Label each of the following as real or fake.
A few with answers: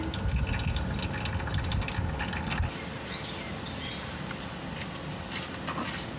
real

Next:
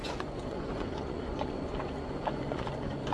fake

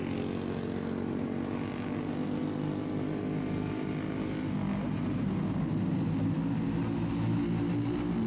real